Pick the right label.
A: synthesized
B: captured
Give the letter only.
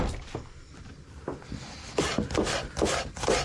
B